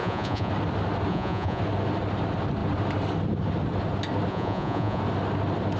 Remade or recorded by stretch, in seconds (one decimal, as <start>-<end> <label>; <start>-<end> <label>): 0.0-0.5 remade; 0.5-1.1 recorded; 1.1-1.6 remade; 1.6-4.3 recorded; 4.3-5.0 remade; 5.0-5.8 recorded